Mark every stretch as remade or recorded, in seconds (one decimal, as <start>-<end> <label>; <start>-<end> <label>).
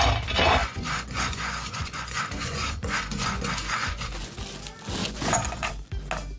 0.0-0.6 recorded; 0.6-4.4 remade; 4.4-5.0 recorded; 5.0-5.7 remade; 5.7-6.4 recorded